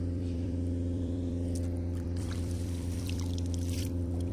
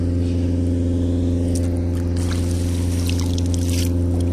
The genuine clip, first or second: second